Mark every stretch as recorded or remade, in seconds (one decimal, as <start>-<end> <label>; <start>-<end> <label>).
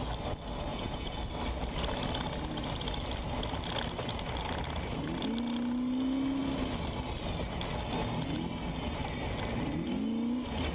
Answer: 0.0-0.7 recorded; 0.7-1.2 remade; 1.2-10.7 recorded